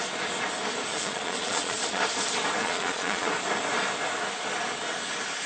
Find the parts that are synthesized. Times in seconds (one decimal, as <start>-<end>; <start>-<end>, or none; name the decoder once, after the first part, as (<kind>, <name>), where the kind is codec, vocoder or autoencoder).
0.9-2.0 (vocoder, Vocos); 2.6-3.3